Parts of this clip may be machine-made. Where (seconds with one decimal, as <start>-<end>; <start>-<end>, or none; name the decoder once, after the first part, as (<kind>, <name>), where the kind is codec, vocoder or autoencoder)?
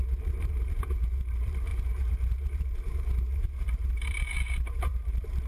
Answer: 0.0-5.5 (vocoder, BigVGAN v2)